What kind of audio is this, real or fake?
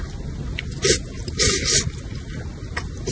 real